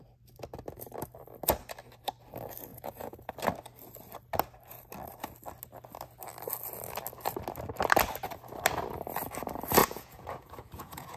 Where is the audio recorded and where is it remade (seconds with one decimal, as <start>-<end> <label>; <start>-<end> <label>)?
0.0-2.7 recorded; 2.7-3.3 remade; 3.3-9.8 recorded; 9.8-11.2 remade